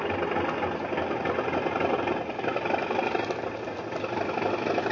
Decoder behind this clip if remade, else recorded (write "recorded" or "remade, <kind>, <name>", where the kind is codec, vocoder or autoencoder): recorded